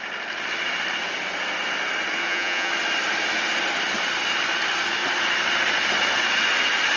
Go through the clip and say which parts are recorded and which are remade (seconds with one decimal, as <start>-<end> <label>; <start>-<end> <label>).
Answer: 0.0-2.2 recorded; 2.2-2.7 remade; 2.7-7.0 recorded